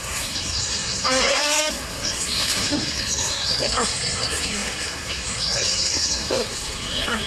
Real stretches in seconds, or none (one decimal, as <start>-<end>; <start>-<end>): none